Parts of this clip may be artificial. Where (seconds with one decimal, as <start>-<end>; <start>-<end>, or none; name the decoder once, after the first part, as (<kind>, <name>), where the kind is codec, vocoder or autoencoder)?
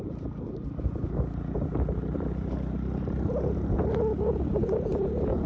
none